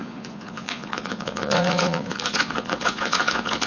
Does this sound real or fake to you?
fake